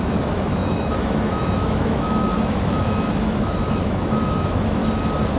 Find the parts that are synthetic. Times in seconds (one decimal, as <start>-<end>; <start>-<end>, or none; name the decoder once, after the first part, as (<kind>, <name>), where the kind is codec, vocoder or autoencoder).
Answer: 0.0-4.8 (autoencoder, DAC-VAE)